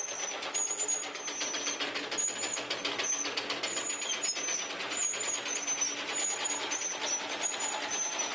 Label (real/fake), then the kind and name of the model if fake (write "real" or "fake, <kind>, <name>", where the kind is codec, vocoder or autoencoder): real